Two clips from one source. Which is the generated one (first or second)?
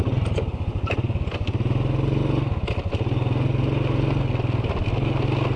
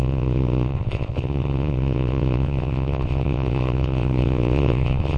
second